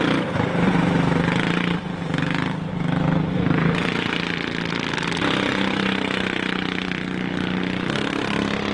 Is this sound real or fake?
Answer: real